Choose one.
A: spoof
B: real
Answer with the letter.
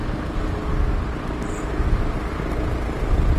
B